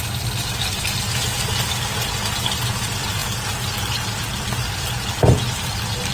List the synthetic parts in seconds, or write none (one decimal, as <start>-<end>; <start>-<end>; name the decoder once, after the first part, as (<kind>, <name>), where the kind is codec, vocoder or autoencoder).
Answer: none